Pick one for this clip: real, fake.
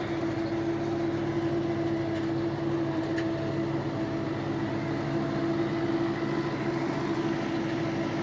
real